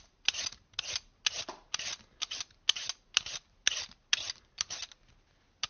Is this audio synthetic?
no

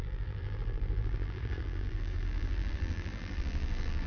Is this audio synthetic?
yes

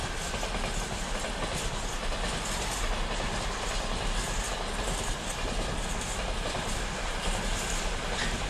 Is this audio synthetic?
no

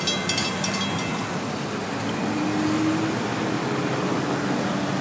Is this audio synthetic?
no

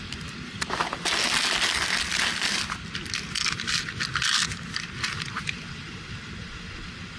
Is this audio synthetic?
no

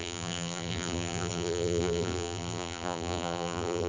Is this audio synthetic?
yes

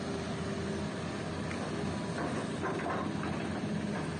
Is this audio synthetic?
no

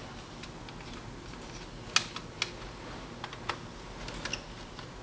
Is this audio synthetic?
no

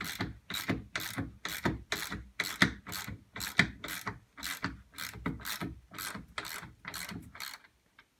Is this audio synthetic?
no